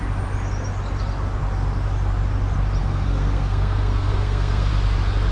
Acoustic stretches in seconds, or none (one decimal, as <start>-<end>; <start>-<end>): 0.0-2.8; 4.7-5.3